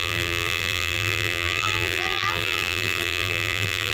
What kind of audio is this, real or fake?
fake